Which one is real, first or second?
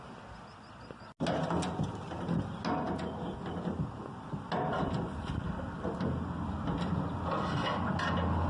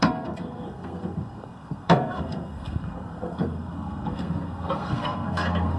first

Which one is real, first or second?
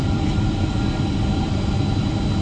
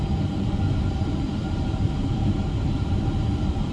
first